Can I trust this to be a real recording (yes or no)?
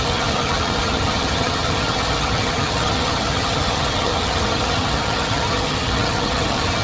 no